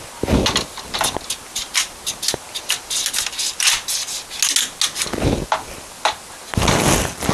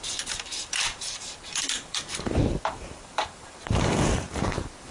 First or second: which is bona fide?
first